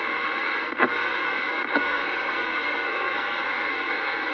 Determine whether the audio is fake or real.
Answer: fake